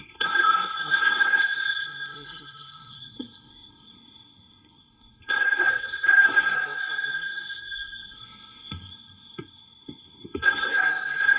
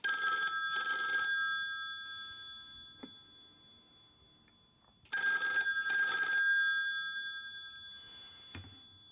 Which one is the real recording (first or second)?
second